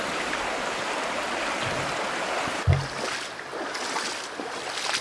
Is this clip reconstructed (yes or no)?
no